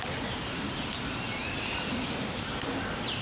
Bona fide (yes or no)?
yes